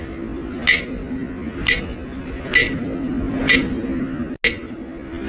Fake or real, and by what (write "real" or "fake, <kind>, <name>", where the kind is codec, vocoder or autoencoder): real